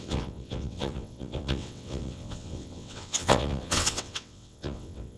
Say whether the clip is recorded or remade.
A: remade